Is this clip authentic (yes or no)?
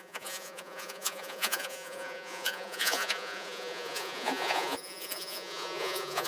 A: no